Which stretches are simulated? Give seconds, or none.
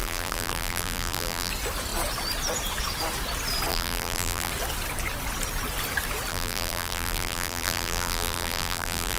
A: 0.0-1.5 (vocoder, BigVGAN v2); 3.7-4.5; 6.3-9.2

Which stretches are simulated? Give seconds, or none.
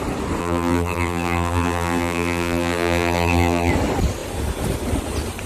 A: 0.4-3.7 (vocoder, BigVGAN v2)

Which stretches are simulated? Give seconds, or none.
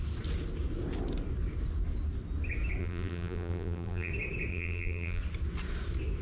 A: 2.8-4.1 (vocoder, BigVGAN v2); 4.5-5.2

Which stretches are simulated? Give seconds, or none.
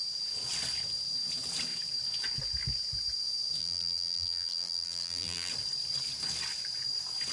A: 3.6-5.5 (vocoder, BigVGAN v2)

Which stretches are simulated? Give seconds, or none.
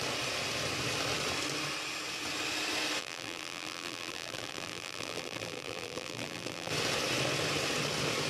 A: 3.0-6.7 (vocoder, BigVGAN v2)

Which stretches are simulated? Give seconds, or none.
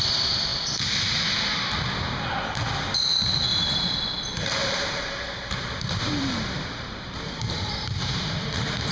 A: 3.5-4.0 (vocoder, BigVGAN v2); 4.6-8.3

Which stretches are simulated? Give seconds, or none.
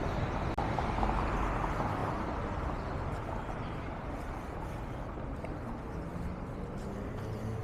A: none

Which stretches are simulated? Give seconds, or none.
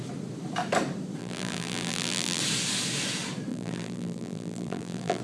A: 1.2-2.4 (vocoder, BigVGAN v2); 3.5-5.2